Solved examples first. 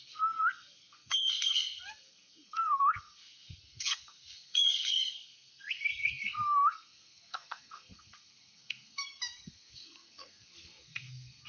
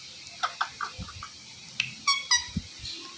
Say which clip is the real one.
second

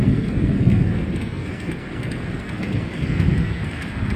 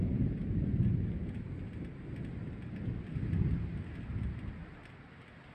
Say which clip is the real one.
second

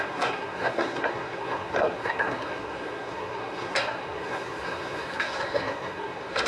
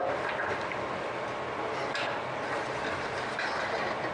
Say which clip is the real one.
second